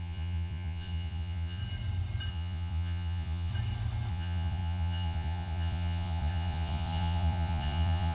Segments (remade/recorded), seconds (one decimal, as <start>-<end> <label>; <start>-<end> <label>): 0.0-1.6 remade; 1.6-2.3 recorded; 2.3-3.5 remade; 3.5-4.1 recorded; 4.1-8.1 remade